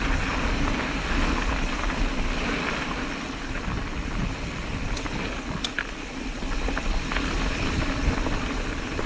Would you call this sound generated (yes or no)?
no